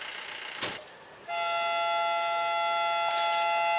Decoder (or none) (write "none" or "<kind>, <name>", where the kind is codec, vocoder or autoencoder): none